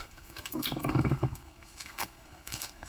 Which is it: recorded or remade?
remade